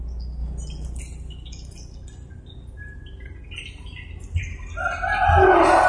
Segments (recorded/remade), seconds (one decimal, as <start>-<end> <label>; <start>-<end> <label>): 0.0-5.9 recorded